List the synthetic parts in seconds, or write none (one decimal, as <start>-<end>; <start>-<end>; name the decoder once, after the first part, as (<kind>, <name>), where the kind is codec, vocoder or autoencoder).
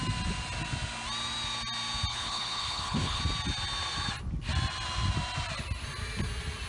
2.1-3.2 (codec, HILCodec)